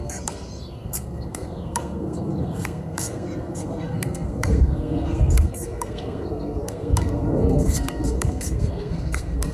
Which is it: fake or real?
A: fake